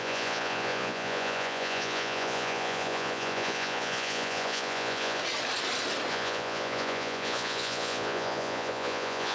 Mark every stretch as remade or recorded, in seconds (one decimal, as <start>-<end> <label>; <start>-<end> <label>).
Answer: 0.0-5.2 remade; 5.2-6.1 recorded; 6.1-9.3 remade